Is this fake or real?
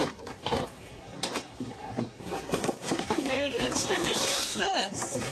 fake